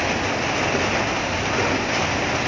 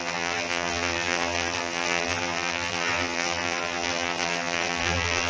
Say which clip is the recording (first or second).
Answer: first